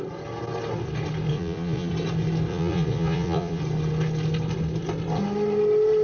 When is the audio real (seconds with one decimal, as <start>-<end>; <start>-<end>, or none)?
0.0-1.3; 1.9-2.5; 3.6-6.0